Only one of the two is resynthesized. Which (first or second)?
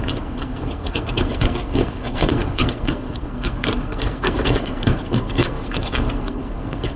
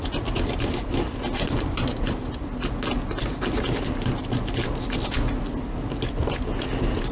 first